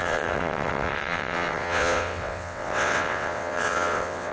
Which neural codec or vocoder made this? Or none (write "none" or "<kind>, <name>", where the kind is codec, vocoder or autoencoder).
vocoder, WaveNeXt